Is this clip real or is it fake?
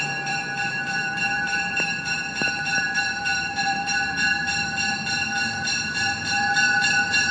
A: fake